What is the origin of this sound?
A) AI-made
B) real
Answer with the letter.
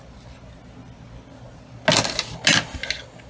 B